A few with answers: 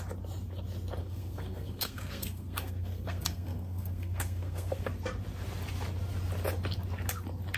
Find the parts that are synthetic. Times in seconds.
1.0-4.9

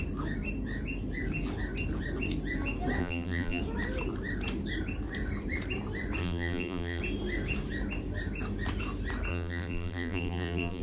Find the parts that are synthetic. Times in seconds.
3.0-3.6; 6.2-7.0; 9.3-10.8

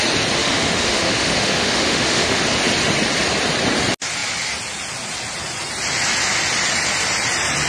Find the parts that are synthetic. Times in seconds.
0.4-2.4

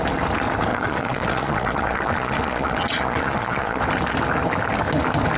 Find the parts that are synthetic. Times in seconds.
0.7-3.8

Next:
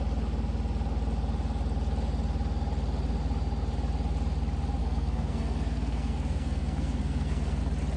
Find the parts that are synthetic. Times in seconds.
4.8-7.6

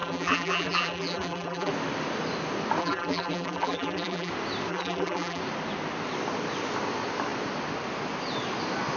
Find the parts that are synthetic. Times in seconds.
0.0-1.7; 2.8-4.3; 4.7-5.4

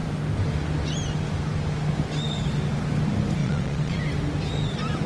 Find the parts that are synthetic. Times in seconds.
3.4-4.0